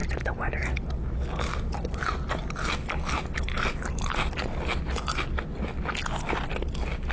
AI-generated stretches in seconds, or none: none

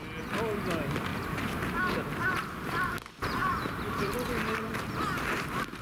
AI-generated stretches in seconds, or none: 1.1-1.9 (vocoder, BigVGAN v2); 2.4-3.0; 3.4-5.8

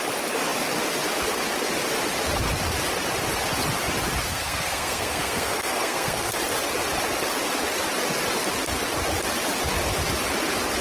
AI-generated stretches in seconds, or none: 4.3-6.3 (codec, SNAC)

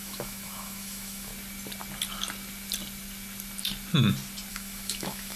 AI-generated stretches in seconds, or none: 0.0-1.3 (autoencoder, DAC-VAE); 4.5-5.4